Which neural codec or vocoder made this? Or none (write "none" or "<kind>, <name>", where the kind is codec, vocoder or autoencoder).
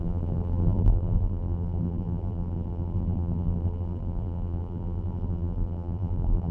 vocoder, BigVGAN v2